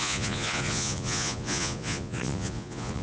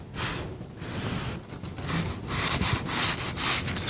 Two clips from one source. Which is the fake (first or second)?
first